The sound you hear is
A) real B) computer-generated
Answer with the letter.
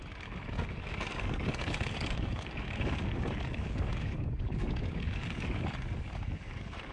B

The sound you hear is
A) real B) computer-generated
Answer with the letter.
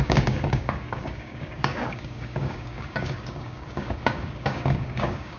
B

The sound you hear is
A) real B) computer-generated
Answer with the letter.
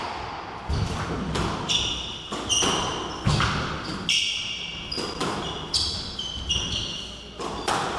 A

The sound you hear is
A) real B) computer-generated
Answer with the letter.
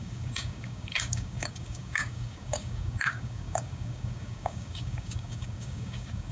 B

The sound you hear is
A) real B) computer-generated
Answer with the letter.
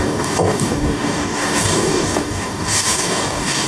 B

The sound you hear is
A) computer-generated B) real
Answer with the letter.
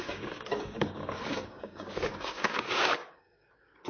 A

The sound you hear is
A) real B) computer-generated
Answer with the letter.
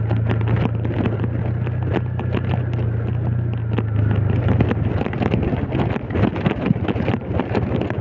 A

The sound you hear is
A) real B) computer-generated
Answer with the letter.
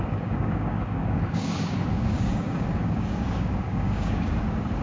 B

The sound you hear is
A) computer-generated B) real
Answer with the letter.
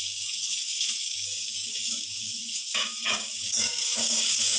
A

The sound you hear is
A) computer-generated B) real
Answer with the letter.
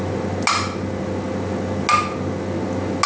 B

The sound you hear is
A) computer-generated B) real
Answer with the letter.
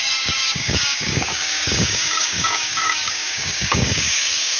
A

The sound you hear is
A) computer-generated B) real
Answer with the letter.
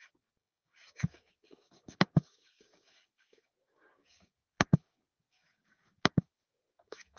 A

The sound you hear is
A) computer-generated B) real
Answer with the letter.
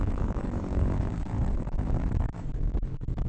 A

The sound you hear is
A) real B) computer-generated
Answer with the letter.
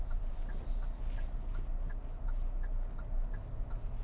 A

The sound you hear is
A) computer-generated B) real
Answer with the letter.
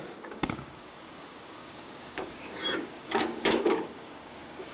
A